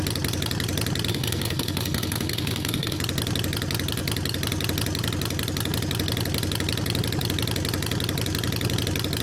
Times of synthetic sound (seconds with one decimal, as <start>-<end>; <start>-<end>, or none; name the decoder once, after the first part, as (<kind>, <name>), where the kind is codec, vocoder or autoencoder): 1.1-3.0 (codec, SNAC)